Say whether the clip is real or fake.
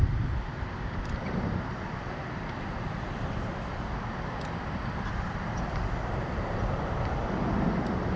fake